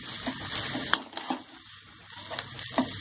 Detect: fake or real real